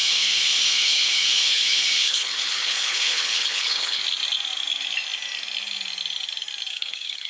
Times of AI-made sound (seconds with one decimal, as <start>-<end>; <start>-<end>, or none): 0.0-4.0; 6.7-7.3